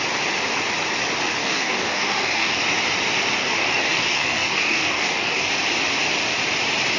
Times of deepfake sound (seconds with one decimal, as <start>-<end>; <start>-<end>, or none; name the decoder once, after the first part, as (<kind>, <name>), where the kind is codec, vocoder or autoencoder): 1.4-2.6 (codec, DAC); 3.4-5.5